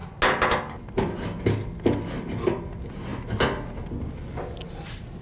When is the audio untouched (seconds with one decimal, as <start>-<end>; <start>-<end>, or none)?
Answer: 0.0-5.2